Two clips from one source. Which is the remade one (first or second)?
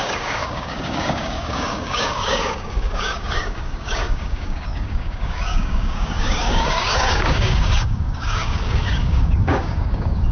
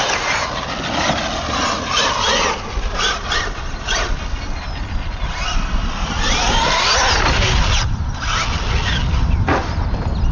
first